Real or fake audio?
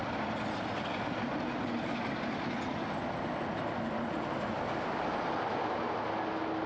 real